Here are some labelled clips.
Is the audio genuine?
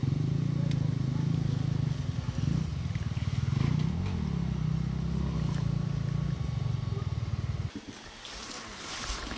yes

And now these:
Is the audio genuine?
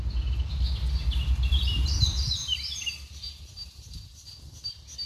yes